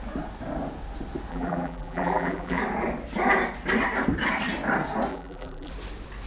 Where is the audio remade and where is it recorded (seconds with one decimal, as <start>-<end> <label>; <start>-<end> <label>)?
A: 0.0-1.3 recorded; 1.3-2.6 remade; 2.6-5.1 recorded; 5.1-5.7 remade; 5.7-6.3 recorded